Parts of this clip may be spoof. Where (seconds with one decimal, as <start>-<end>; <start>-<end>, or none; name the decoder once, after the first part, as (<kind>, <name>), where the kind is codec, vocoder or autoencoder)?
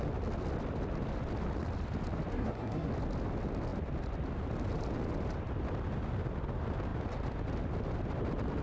2.3-2.9 (codec, SNAC)